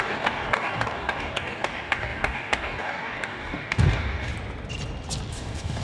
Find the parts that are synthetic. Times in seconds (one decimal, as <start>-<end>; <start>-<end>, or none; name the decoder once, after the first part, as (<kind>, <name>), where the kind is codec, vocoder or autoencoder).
0.0-4.3 (codec, DAC); 5.3-5.8